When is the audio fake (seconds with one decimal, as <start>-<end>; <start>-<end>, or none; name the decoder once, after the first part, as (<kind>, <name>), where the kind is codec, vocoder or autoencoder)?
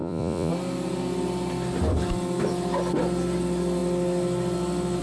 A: 0.0-0.5 (vocoder, Vocos)